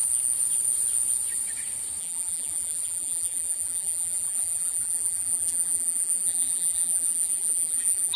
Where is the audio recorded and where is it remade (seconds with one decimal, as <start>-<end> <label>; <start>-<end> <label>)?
0.0-2.0 recorded; 2.0-8.2 remade